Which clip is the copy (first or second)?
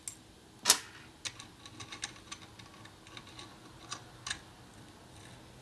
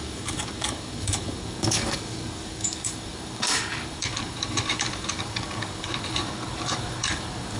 second